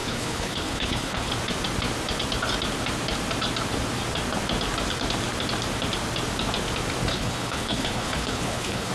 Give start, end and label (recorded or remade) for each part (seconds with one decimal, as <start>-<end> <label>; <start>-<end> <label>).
0.0-1.3 remade; 1.3-7.1 recorded; 7.1-8.9 remade